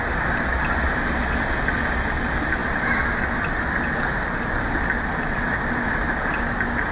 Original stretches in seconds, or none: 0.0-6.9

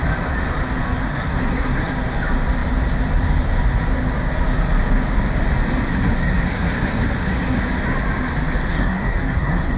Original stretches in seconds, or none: 0.0-1.0; 1.9-5.9; 7.6-8.7

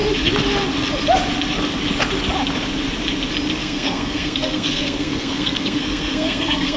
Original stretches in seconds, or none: 0.0-3.6

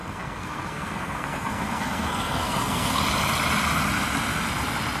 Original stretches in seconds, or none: 3.0-5.0